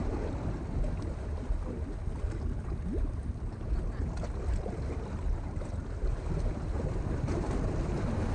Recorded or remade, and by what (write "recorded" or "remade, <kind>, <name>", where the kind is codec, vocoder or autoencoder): recorded